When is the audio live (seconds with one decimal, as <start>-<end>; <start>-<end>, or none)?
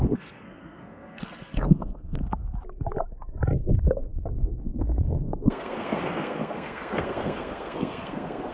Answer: 2.2-3.6